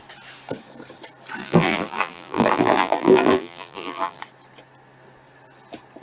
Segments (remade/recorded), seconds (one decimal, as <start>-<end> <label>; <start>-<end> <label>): 0.0-1.4 recorded; 1.4-4.2 remade; 4.2-6.0 recorded